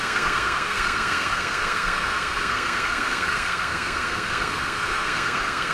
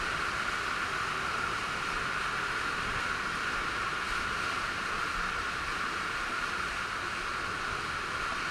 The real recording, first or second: second